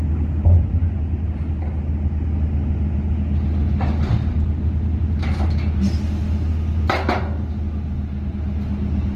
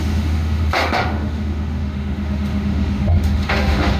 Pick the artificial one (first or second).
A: second